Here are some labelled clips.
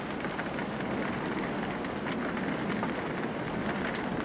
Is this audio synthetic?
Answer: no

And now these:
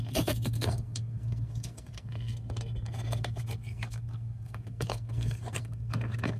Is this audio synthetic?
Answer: yes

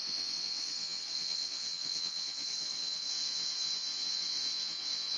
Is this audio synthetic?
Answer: yes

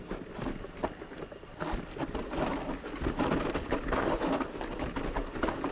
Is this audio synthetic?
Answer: no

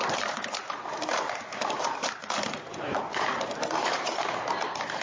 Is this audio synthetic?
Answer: yes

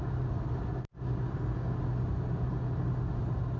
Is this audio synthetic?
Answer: no